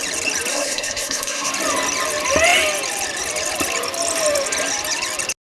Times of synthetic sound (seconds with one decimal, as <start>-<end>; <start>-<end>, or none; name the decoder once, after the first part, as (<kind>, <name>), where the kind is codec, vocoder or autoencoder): 0.5-1.5 (codec, SNAC)

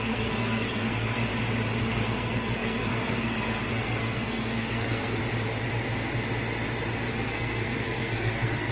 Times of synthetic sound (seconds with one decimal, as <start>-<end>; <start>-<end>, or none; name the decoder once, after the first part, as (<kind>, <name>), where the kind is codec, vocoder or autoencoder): 0.0-1.3 (codec, SNAC); 1.8-5.2; 7.1-8.7

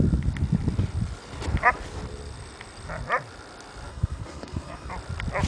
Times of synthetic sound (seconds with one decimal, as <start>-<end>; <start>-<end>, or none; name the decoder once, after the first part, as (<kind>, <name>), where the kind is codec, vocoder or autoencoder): 3.9-4.9 (codec, SNAC)